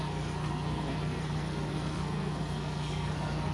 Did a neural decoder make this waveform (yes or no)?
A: yes